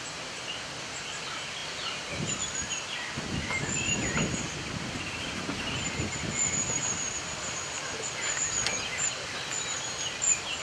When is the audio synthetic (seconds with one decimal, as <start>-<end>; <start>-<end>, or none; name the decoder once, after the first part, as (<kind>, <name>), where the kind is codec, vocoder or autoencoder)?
1.6-2.3 (vocoder, BigVGAN v2)